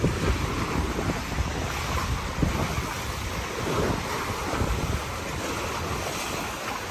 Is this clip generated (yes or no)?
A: no